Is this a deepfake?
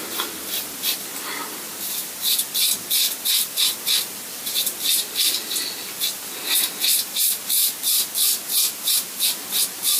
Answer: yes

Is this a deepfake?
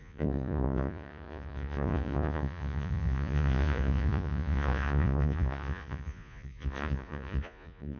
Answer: yes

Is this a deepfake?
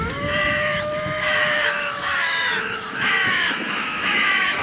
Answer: yes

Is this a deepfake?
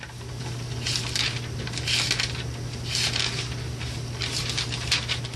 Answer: no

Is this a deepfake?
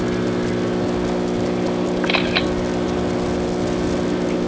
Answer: no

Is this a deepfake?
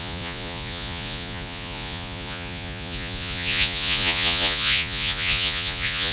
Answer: yes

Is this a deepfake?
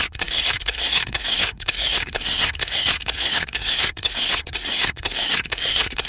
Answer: yes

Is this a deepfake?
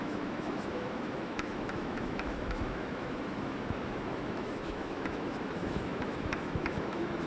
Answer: yes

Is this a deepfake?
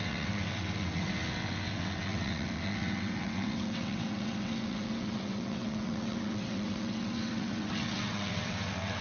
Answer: yes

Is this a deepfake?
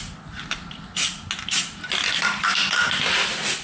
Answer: no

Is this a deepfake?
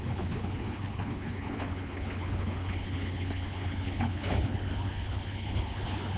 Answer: yes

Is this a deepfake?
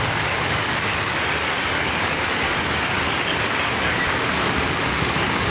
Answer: yes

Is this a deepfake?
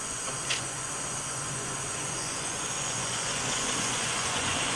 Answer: yes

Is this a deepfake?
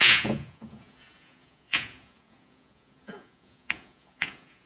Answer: yes